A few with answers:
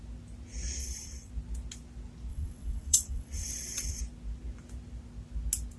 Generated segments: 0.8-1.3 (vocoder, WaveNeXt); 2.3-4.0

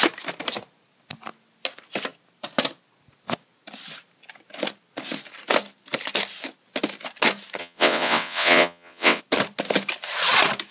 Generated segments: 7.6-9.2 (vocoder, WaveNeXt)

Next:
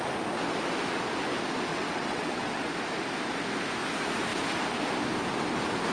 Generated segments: 1.7-2.7 (vocoder, WaveNeXt)